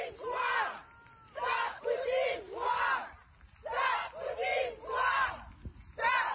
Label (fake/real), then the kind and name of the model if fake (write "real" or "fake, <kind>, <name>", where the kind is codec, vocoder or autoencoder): real